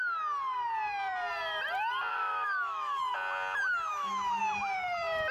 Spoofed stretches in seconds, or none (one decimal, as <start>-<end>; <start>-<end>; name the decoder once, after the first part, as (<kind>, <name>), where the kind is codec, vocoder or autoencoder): 2.1-3.0 (autoencoder, DAC-VAE); 3.9-4.4